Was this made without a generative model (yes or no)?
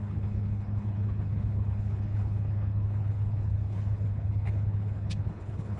no